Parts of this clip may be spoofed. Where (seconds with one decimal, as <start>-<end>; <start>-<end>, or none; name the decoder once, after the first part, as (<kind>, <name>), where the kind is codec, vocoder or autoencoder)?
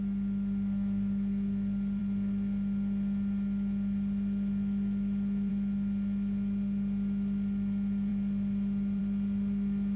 none